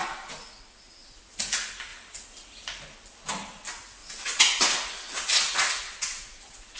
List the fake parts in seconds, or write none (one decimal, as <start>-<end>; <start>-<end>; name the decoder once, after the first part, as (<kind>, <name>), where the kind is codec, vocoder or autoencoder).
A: 0.0-1.2 (vocoder, Vocos); 4.0-6.8